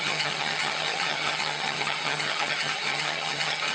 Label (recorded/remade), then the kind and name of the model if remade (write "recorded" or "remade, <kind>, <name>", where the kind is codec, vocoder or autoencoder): remade, vocoder, HiFi-GAN